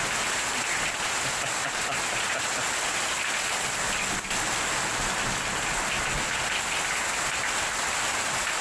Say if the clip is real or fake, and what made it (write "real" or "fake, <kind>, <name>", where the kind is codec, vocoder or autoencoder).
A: real